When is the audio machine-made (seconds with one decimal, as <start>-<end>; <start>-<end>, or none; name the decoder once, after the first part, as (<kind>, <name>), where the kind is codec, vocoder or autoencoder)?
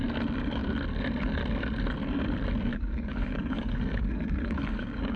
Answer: 2.7-5.2 (codec, DAC)